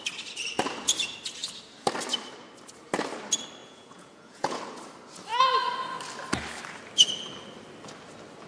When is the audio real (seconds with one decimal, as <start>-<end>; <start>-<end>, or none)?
0.0-3.6; 4.6-8.5